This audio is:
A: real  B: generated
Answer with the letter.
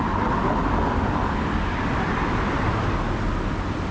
A